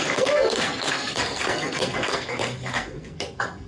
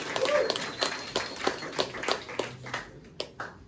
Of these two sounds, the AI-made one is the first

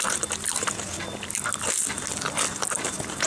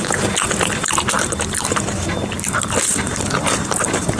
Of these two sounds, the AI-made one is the second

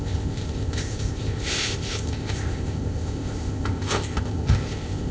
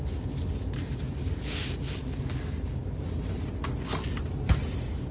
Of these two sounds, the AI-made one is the first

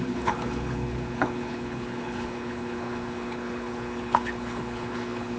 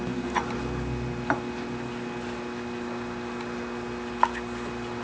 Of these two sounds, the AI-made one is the first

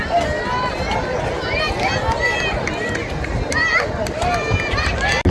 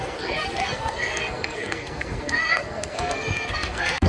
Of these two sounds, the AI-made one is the second